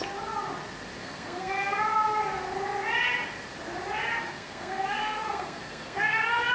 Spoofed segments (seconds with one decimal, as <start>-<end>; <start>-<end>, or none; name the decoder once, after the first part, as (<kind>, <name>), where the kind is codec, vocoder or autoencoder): 1.0-1.8 (codec, SNAC); 4.2-6.5